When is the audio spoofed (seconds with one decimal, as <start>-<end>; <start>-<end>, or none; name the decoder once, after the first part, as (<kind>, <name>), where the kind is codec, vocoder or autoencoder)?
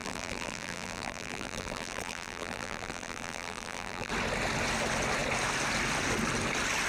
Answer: 0.0-4.1 (vocoder, BigVGAN v2)